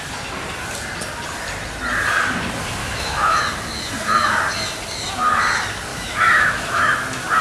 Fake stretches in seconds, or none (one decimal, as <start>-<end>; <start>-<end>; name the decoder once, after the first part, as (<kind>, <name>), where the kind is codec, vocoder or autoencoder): 2.8-3.4 (autoencoder, DAC-VAE); 5.9-6.9